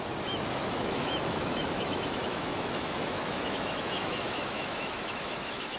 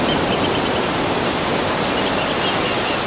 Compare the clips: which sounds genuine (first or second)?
second